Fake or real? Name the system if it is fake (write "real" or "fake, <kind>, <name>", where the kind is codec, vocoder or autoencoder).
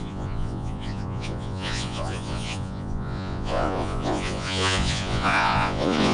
fake, vocoder, Vocos